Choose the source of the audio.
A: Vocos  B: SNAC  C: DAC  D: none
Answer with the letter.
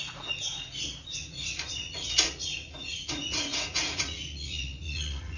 A